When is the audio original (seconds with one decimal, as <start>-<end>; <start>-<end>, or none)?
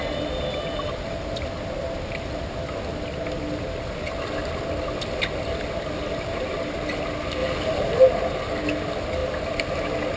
0.0-10.2